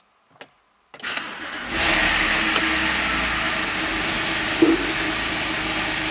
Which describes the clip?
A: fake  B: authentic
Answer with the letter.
B